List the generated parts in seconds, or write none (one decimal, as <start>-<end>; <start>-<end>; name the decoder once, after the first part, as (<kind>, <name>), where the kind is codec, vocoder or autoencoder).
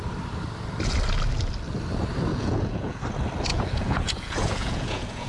2.3-3.0 (vocoder, Vocos); 3.5-5.3